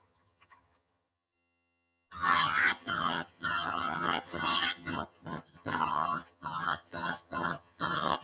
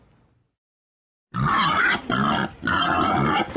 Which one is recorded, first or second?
second